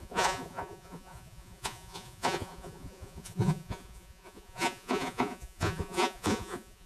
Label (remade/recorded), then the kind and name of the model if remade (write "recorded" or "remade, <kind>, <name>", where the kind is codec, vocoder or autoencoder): remade, vocoder, Vocos